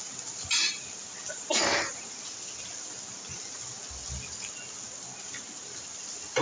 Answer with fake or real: real